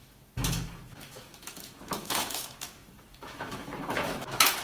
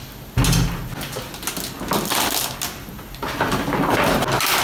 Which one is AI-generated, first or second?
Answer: first